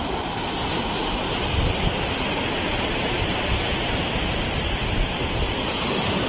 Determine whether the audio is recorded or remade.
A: recorded